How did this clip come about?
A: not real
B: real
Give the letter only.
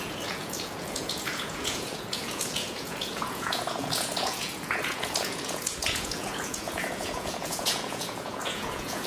A